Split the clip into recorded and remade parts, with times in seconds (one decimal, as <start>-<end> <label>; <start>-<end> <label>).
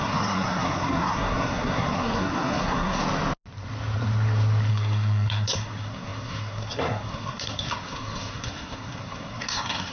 0.0-3.0 remade; 3.0-4.7 recorded; 4.7-9.9 remade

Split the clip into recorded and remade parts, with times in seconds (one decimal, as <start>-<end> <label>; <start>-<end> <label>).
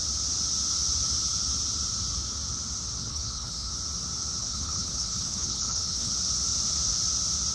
0.0-3.0 recorded; 3.0-3.7 remade; 3.7-4.4 recorded; 4.4-6.1 remade; 6.1-7.5 recorded